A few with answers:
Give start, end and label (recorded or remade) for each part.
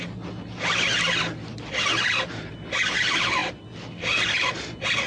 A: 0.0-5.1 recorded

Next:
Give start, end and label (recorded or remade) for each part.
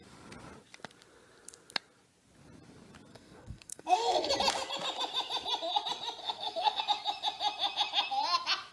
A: 0.0-3.1 recorded; 3.1-4.3 remade; 4.3-6.2 recorded; 6.2-6.8 remade; 6.8-8.7 recorded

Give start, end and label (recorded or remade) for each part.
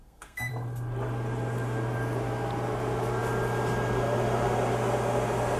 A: 0.0-0.5 remade; 0.5-5.6 recorded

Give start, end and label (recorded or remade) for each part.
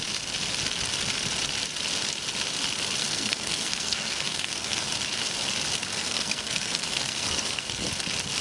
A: 0.0-3.0 recorded; 3.0-4.9 remade; 4.9-5.9 recorded; 5.9-7.9 remade; 7.9-8.4 recorded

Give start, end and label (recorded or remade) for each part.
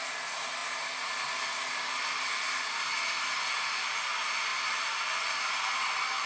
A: 0.0-6.3 recorded